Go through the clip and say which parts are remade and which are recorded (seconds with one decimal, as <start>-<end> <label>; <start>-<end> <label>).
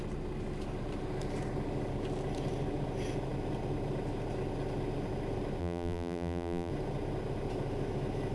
0.0-5.6 recorded; 5.6-6.7 remade; 6.7-8.3 recorded